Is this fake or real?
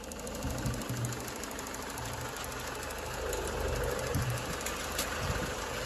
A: real